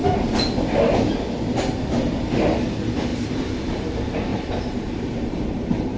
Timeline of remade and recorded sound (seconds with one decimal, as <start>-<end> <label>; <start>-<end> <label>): 0.0-3.1 recorded; 3.1-3.9 remade; 3.9-4.3 recorded; 4.3-6.0 remade